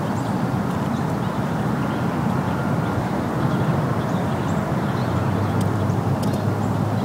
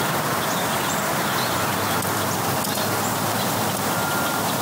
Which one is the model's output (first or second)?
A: first